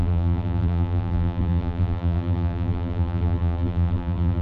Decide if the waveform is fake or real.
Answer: fake